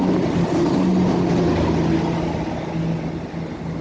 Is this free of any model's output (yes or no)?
yes